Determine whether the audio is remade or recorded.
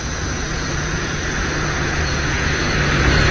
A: remade